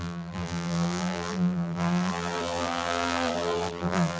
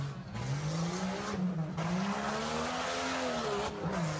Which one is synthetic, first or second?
first